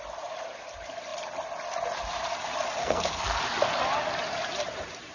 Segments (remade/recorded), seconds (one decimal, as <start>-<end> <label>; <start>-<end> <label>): 0.0-2.8 recorded; 2.8-3.4 remade; 3.4-5.1 recorded